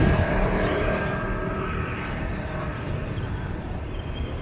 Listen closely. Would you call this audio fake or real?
fake